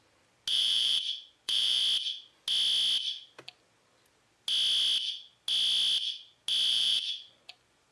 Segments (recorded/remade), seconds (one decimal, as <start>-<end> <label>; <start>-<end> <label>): 0.0-0.5 recorded; 0.5-1.8 remade; 1.8-6.7 recorded; 6.7-7.9 remade